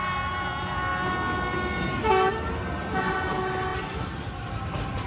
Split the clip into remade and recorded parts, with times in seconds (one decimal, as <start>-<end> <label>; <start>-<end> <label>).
0.0-5.1 recorded

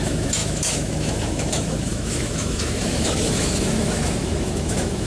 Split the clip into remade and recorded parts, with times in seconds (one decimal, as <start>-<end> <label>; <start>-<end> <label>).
0.0-5.1 remade

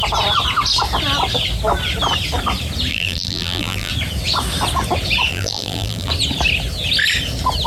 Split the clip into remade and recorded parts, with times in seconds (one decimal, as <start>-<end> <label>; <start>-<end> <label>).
0.0-2.9 recorded; 2.9-3.9 remade; 3.9-5.3 recorded; 5.3-6.1 remade; 6.1-7.7 recorded